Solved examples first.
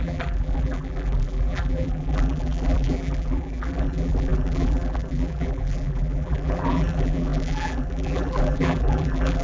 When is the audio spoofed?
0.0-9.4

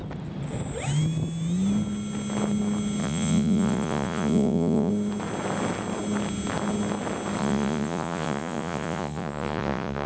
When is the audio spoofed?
3.0-4.9; 7.4-10.1

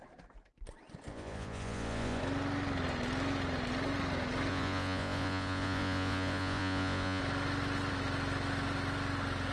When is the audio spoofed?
1.1-2.2; 4.5-7.2

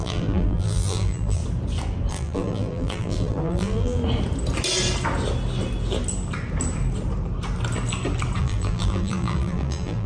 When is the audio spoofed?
0.0-1.4; 2.1-4.0; 8.4-10.1

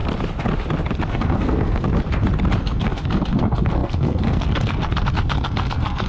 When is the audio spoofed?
1.0-1.9; 2.6-6.1

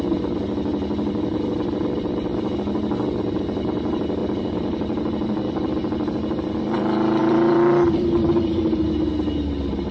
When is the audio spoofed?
4.2-6.6; 7.2-8.6

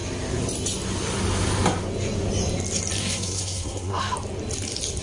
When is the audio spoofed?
3.0-4.0